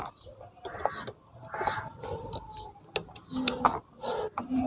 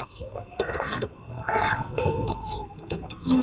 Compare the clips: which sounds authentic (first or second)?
first